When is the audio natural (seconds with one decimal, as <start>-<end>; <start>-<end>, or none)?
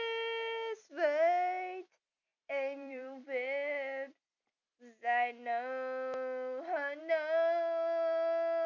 0.0-2.3; 3.2-8.7